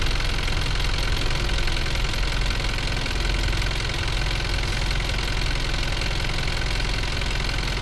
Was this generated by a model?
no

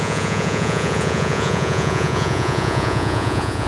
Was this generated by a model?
yes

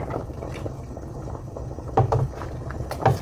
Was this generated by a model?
no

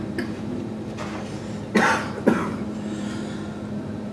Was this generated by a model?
yes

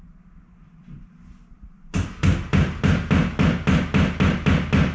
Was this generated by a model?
no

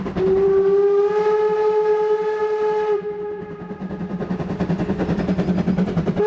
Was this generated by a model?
no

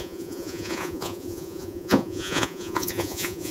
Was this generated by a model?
yes